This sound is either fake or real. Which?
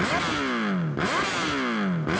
real